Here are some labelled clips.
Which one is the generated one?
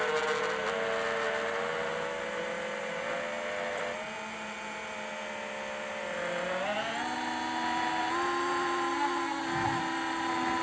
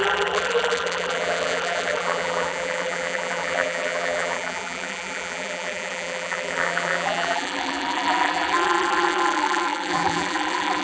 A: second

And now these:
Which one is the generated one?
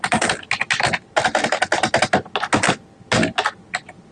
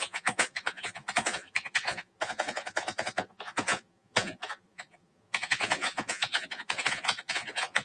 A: second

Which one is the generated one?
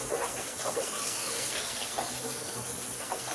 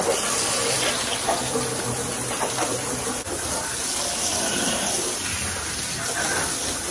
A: first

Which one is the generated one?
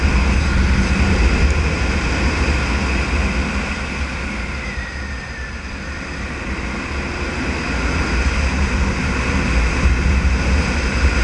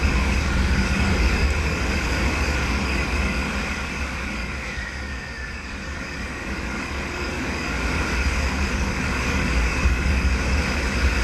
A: second